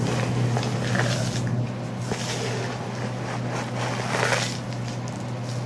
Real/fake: real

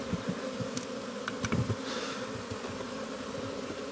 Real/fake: real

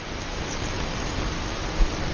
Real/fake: real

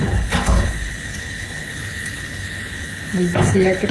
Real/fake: fake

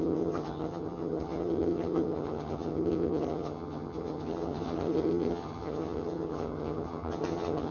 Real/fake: fake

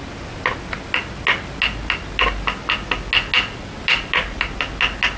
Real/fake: real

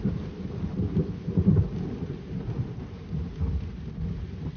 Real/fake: real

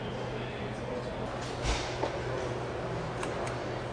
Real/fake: real